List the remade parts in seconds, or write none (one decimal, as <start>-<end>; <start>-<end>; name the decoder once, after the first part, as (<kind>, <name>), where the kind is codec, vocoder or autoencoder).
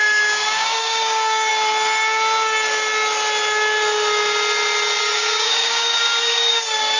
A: 0.0-1.5 (codec, DAC); 5.0-7.0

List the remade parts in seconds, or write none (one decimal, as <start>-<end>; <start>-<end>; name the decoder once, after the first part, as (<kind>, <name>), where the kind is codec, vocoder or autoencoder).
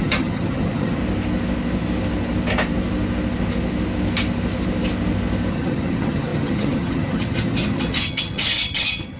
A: 0.0-1.0 (vocoder, HiFi-GAN); 5.5-9.2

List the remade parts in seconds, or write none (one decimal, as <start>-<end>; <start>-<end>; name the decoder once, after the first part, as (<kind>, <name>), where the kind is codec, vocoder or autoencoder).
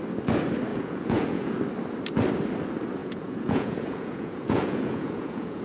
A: 0.7-1.6 (vocoder, Vocos); 3.0-5.6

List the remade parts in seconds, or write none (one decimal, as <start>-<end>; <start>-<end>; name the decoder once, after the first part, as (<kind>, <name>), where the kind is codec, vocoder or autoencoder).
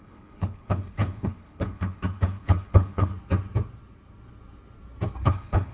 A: 0.0-3.1 (codec, HILCodec); 5.2-5.7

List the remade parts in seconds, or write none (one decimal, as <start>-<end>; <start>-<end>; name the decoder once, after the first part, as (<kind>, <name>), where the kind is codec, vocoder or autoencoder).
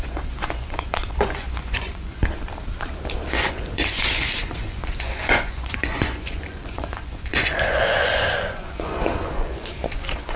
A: 0.0-2.2 (vocoder, Vocos); 3.3-10.4